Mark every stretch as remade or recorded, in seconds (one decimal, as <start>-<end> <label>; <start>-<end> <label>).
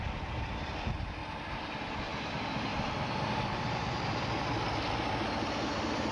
0.0-2.7 recorded; 2.7-4.1 remade; 4.1-6.1 recorded